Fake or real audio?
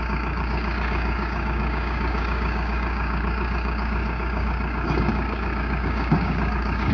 fake